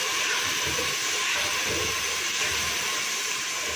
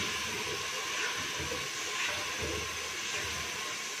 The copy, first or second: first